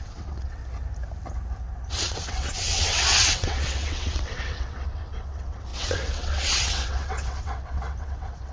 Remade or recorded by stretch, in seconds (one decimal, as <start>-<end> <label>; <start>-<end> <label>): 0.0-0.6 remade; 0.6-1.9 recorded; 1.9-8.5 remade